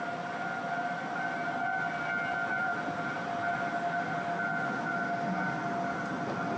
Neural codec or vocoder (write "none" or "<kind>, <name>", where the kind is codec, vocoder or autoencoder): none